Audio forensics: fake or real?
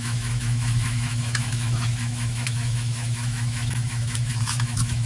fake